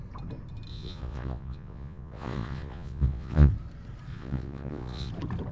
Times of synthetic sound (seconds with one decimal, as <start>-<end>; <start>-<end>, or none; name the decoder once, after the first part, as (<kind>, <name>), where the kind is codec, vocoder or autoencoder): 0.7-3.5 (vocoder, Vocos); 4.1-5.1